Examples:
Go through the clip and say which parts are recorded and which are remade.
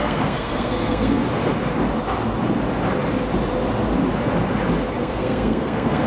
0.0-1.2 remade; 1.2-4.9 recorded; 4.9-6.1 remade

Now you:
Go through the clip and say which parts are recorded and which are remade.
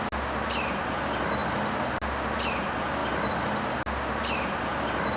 0.0-5.2 recorded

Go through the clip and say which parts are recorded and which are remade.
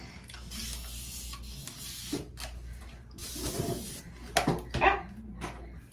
0.0-5.9 recorded